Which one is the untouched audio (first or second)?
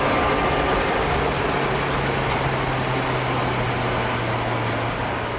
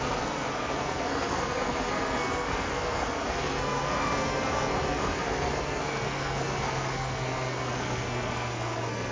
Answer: first